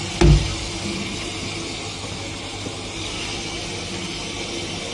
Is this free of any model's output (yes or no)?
yes